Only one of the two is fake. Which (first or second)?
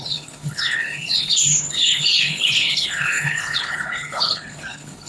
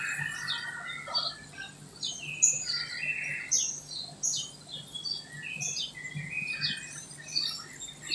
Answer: first